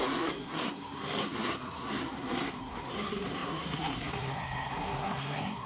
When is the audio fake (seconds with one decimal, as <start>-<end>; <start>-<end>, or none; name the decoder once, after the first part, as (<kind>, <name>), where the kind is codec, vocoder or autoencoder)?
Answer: 0.0-5.7 (codec, SNAC)